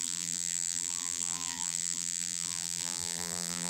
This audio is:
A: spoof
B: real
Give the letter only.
A